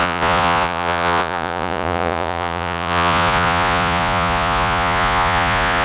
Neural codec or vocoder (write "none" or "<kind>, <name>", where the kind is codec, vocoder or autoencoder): vocoder, Vocos